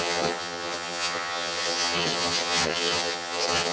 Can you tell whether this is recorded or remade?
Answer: remade